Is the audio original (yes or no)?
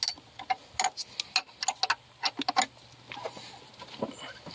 yes